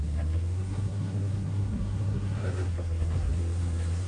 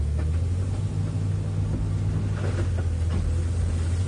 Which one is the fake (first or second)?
first